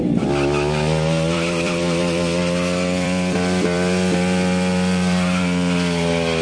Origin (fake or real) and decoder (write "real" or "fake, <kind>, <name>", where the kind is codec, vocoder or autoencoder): fake, vocoder, BigVGAN v2